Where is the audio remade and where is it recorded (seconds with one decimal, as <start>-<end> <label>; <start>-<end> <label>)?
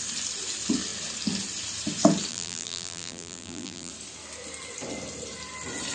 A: 0.0-2.3 recorded; 2.3-3.9 remade; 3.9-5.9 recorded